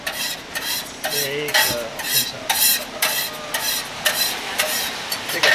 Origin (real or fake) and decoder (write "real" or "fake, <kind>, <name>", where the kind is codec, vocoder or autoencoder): real